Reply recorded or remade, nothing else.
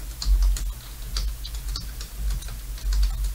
recorded